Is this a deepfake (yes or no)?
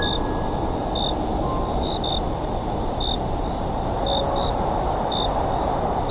no